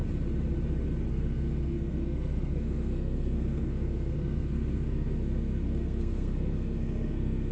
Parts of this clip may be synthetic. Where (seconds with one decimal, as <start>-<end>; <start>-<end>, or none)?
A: 1.1-7.5